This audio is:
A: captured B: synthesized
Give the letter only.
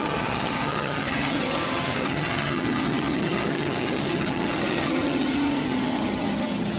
B